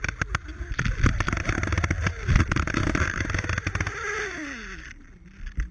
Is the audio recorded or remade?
recorded